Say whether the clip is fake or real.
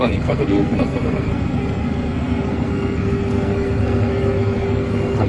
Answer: fake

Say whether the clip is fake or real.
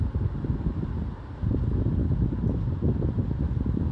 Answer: real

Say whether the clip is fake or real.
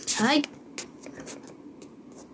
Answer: real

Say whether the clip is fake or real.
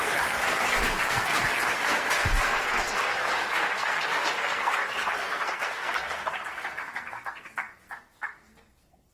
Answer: fake